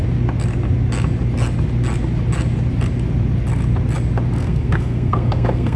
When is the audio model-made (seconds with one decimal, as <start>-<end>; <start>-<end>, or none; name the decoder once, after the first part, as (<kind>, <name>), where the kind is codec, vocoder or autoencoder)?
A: 4.4-5.8 (codec, SNAC)